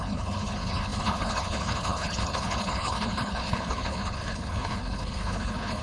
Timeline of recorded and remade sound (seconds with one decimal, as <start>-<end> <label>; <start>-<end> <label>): 0.0-5.8 remade